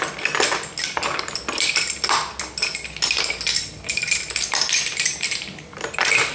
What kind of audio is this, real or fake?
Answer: real